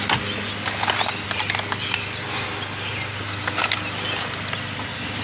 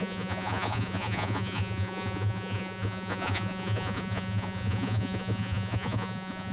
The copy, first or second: second